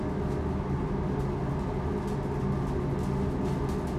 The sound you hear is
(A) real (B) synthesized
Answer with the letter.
A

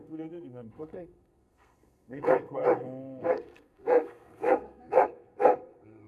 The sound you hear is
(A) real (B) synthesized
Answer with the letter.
B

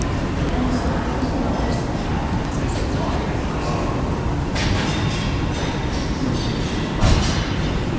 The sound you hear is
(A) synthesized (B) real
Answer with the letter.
B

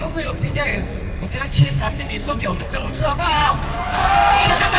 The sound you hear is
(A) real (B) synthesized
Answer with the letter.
B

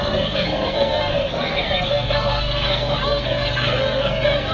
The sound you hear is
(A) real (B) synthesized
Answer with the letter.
B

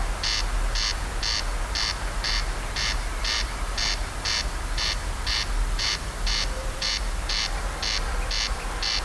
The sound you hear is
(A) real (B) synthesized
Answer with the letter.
A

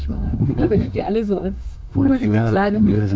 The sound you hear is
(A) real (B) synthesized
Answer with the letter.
B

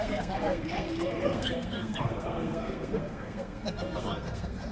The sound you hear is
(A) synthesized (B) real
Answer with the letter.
A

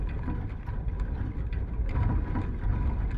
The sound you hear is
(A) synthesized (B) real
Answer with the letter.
B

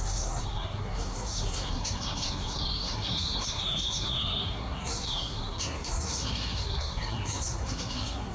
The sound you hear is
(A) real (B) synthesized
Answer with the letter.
B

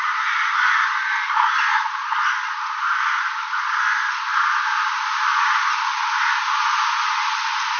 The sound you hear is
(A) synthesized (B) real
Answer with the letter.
B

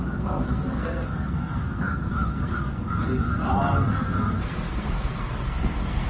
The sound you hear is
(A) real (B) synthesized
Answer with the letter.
B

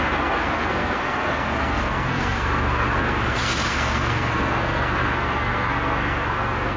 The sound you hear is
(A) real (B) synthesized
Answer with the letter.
B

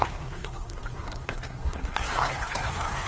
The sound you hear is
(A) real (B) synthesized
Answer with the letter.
B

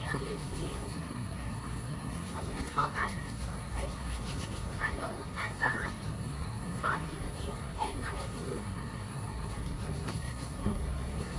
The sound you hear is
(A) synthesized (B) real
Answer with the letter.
A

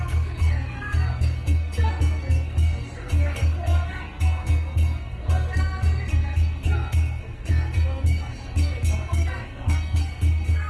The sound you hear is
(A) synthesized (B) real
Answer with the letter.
A